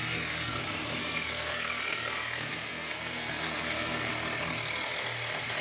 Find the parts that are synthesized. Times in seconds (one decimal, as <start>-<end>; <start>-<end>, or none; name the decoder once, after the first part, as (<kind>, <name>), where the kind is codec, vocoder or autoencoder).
0.0-0.6 (codec, SNAC); 1.0-4.1